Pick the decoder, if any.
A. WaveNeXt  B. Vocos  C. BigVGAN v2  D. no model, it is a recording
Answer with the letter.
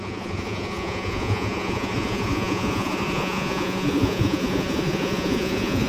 B